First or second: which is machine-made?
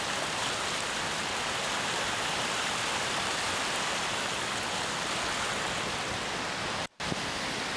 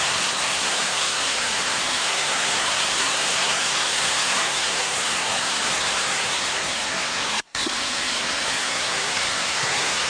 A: second